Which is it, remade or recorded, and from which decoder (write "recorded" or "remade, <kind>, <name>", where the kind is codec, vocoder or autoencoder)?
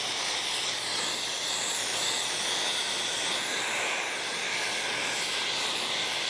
recorded